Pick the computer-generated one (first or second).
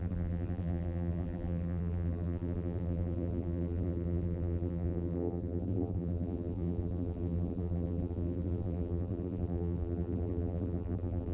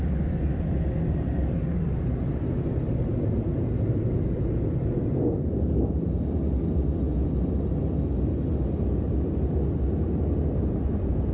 first